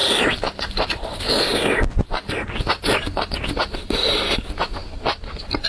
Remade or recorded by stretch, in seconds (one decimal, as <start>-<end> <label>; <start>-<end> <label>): 0.0-1.5 remade; 1.5-2.8 recorded; 2.8-5.7 remade